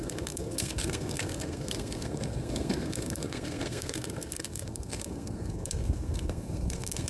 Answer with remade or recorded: remade